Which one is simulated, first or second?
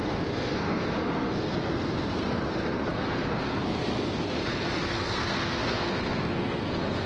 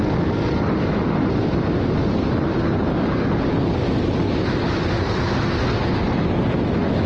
first